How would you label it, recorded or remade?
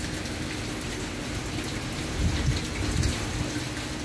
recorded